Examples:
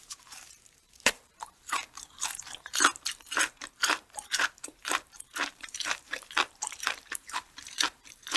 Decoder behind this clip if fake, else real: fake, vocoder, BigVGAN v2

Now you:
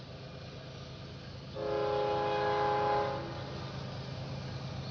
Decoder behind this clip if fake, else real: real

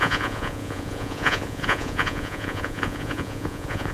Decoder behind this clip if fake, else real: fake, vocoder, Vocos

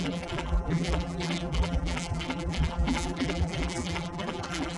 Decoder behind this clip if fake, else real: fake, vocoder, BigVGAN v2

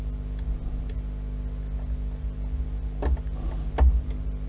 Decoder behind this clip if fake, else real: real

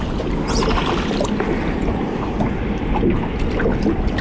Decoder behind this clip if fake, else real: real